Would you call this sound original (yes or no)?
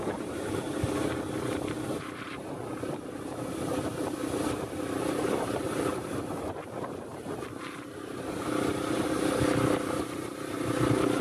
no